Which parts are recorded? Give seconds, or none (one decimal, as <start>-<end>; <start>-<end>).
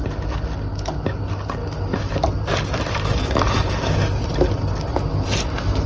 0.0-5.9